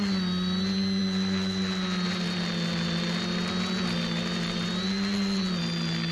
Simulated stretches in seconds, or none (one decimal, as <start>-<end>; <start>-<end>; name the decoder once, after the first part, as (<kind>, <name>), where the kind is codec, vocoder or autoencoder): none